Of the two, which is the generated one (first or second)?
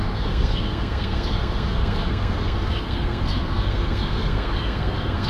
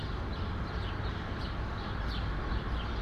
first